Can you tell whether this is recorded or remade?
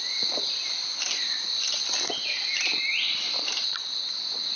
recorded